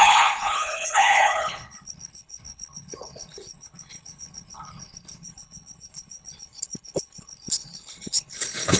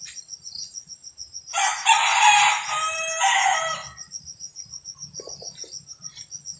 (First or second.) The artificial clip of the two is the first